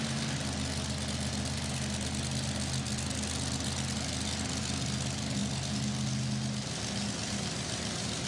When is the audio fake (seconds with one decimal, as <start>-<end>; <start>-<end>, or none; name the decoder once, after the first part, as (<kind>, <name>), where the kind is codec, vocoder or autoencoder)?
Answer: none